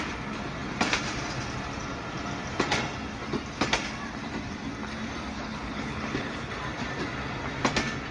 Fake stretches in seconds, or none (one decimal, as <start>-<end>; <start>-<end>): 5.3-6.5